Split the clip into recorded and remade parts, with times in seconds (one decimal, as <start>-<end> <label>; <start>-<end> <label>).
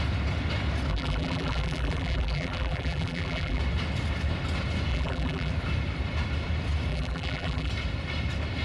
0.0-0.9 recorded; 0.9-3.6 remade; 3.6-4.9 recorded; 4.9-5.5 remade; 5.5-6.9 recorded; 6.9-7.7 remade; 7.7-8.6 recorded